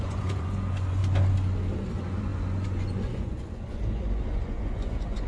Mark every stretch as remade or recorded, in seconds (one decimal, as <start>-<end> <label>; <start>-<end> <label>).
0.0-1.0 remade; 1.0-1.9 recorded; 1.9-5.3 remade